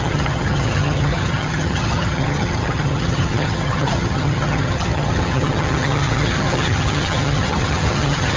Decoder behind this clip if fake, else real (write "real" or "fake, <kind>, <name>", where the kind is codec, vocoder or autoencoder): fake, vocoder, HiFi-GAN